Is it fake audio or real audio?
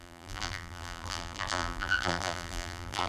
fake